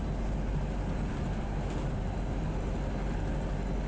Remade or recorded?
recorded